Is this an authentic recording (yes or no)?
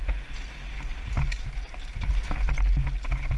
yes